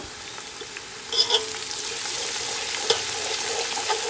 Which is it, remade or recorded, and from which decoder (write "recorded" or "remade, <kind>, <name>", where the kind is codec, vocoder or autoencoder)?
recorded